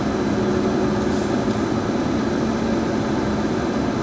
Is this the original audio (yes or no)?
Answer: yes